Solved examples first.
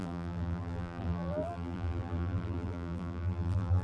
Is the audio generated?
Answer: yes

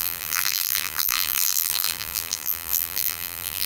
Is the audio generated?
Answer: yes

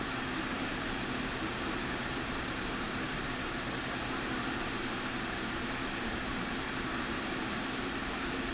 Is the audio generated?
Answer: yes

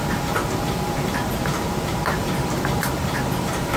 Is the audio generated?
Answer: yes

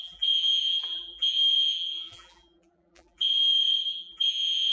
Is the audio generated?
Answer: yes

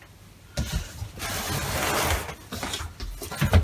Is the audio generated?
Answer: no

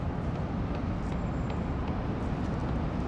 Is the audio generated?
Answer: no